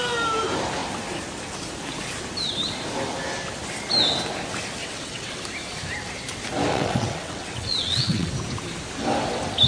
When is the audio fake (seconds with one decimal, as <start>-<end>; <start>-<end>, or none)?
4.8-5.4; 6.7-8.3